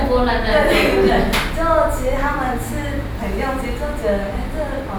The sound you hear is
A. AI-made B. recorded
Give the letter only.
B